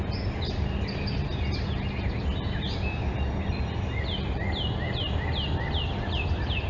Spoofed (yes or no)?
no